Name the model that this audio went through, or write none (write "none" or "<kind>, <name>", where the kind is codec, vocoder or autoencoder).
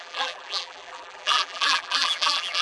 vocoder, BigVGAN v2